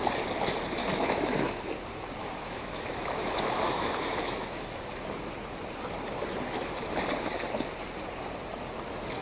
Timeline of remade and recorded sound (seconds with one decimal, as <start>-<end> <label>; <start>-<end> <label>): 0.0-0.8 recorded; 0.8-1.6 remade; 1.6-2.2 recorded; 2.2-4.8 remade; 4.8-9.2 recorded